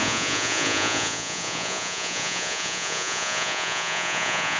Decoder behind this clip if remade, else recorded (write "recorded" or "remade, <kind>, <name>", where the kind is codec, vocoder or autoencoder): remade, vocoder, Vocos